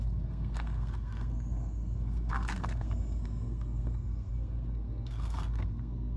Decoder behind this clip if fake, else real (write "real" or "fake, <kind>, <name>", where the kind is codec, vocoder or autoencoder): fake, codec, SNAC